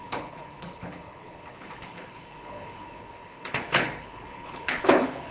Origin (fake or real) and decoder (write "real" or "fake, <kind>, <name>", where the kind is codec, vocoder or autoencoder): fake, codec, HILCodec